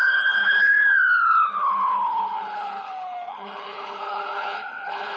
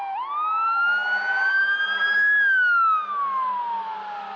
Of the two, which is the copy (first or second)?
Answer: first